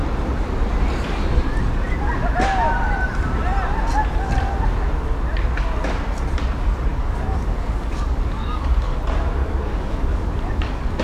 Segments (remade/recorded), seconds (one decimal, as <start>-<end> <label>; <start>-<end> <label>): 0.0-6.9 recorded; 6.9-9.0 remade; 9.0-9.4 recorded; 9.4-11.0 remade